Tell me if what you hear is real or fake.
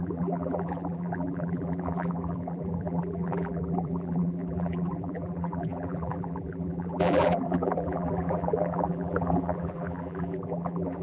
fake